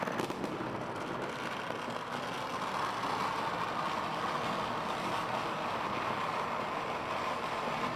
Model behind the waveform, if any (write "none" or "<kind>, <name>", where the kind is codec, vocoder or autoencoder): none